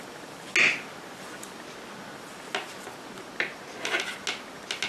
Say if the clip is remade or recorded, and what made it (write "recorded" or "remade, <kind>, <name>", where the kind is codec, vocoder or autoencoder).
recorded